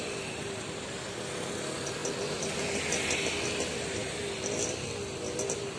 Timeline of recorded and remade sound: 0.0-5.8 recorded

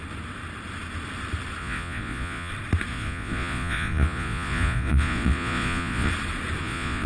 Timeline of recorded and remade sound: 0.0-1.6 recorded; 1.6-2.5 remade; 2.5-2.9 recorded; 2.9-6.1 remade; 6.1-6.6 recorded; 6.6-7.1 remade

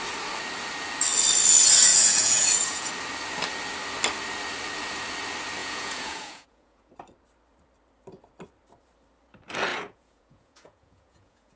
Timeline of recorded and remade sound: 0.0-1.9 recorded; 1.9-2.9 remade; 2.9-5.6 recorded; 5.6-6.9 remade; 6.9-9.7 recorded; 9.7-11.6 remade

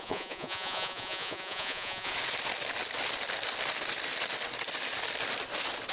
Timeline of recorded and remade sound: 0.0-2.1 remade; 2.1-5.9 recorded

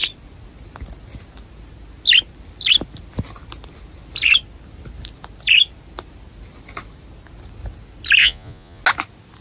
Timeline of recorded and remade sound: 0.0-8.2 recorded; 8.2-8.8 remade; 8.8-9.4 recorded

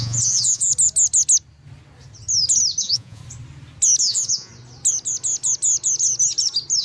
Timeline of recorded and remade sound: 0.0-0.7 remade; 0.7-2.8 recorded; 2.8-3.2 remade; 3.2-4.0 recorded; 4.0-4.5 remade; 4.5-6.8 recorded

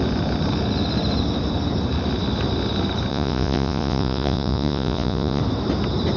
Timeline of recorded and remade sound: 0.0-3.1 recorded; 3.1-5.4 remade; 5.4-6.2 recorded

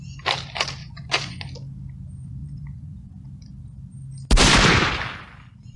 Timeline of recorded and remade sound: 0.0-0.8 recorded; 0.8-1.5 remade; 1.5-2.4 recorded; 2.4-3.1 remade; 3.1-5.8 recorded